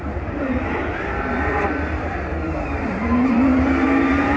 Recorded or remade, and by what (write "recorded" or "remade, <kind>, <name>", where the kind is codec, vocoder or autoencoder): remade, vocoder, BigVGAN v2